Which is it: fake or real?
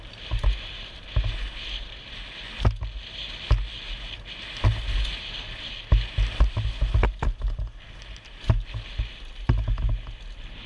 real